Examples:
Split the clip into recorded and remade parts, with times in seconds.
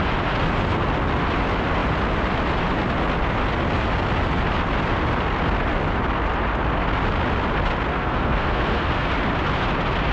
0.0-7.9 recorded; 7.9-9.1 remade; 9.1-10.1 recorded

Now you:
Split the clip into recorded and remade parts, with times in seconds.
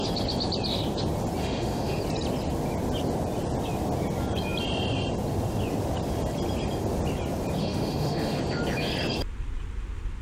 0.0-1.4 recorded; 1.4-2.0 remade; 2.0-7.6 recorded; 7.6-8.4 remade; 8.4-10.2 recorded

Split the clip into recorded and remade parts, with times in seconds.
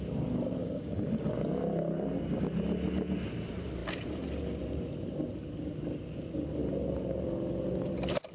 0.0-0.6 recorded; 0.6-1.3 remade; 1.3-8.3 recorded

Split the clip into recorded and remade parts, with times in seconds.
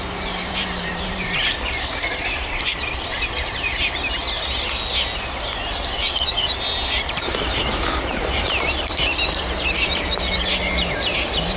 0.0-4.2 remade; 4.2-5.2 recorded; 5.2-11.6 remade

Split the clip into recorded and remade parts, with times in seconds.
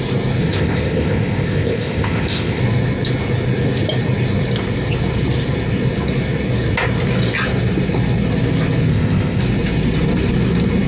0.0-0.4 recorded; 0.4-2.6 remade; 2.6-8.9 recorded; 8.9-9.4 remade; 9.4-10.9 recorded